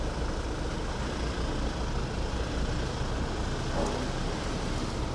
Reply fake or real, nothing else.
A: real